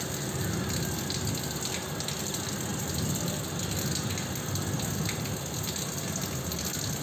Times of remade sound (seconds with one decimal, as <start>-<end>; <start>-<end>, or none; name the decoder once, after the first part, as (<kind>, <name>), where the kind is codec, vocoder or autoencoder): none